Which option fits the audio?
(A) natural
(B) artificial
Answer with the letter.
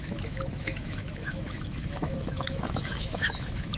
B